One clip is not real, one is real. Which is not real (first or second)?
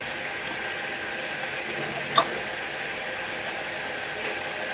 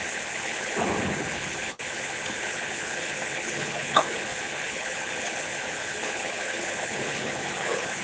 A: second